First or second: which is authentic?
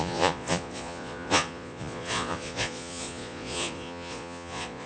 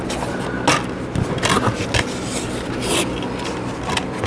second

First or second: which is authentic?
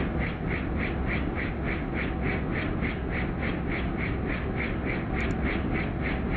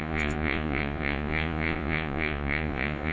first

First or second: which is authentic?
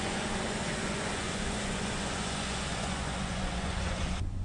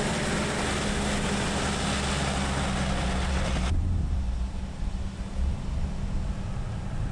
second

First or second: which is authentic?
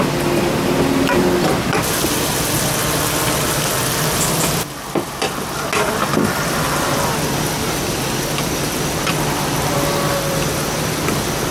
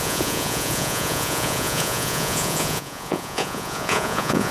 first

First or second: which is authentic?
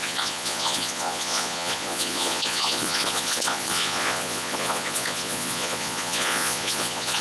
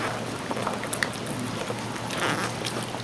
second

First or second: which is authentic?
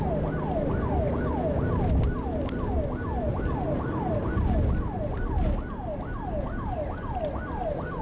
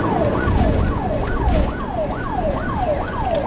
first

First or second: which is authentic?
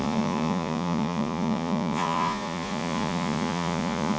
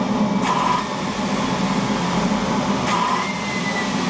second